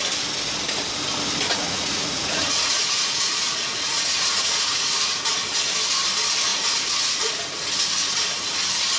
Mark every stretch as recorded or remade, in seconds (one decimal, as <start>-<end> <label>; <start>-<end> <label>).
0.0-1.5 recorded; 1.5-5.4 remade; 5.4-6.5 recorded; 6.5-7.3 remade; 7.3-9.0 recorded